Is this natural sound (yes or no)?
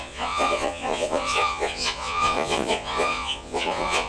no